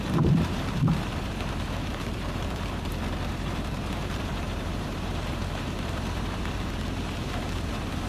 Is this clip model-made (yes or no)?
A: yes